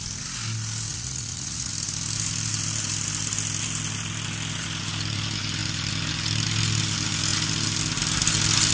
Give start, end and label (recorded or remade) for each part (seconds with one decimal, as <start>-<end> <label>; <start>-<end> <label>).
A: 0.0-0.9 recorded; 0.9-1.7 remade; 1.7-8.7 recorded